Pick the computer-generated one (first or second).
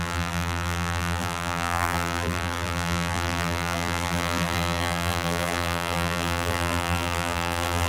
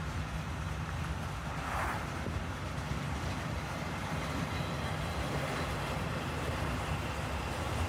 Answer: first